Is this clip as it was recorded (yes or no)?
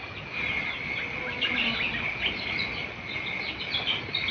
yes